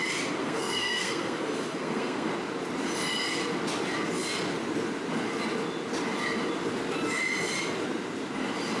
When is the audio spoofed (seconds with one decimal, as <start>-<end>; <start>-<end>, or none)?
0.4-2.3